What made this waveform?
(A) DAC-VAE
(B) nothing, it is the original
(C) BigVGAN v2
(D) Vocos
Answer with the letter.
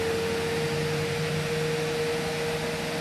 B